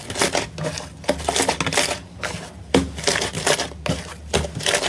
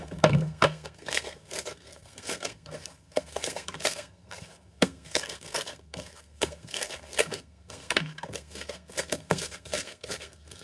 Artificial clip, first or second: second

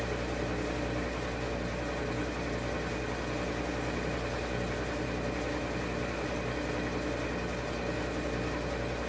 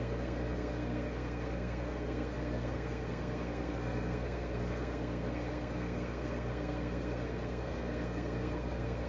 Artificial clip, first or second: second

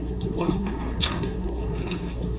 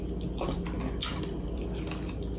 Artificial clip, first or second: first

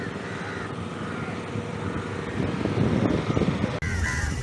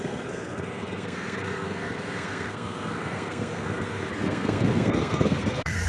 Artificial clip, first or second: second